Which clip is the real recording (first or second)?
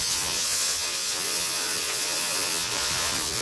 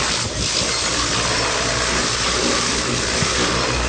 second